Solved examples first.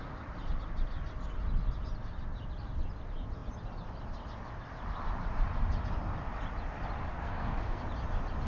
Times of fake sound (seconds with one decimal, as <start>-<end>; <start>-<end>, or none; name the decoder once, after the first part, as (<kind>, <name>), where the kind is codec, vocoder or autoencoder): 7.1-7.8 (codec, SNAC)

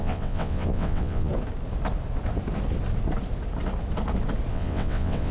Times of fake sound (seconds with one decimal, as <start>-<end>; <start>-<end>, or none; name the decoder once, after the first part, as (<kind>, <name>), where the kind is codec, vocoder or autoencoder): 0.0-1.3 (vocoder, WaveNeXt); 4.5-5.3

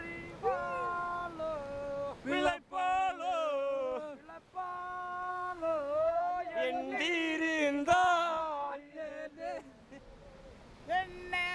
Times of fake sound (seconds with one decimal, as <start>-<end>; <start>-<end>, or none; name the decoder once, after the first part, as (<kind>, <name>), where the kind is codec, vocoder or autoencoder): 5.3-6.2 (codec, SNAC); 8.4-9.1

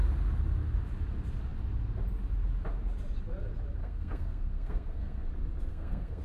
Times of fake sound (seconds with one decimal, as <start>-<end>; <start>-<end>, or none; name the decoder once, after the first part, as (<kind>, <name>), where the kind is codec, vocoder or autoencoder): 3.8-5.3 (codec, SNAC); 5.7-6.2

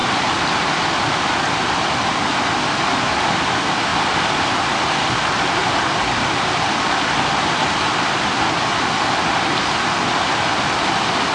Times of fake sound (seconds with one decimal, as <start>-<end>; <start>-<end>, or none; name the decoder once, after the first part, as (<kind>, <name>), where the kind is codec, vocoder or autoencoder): none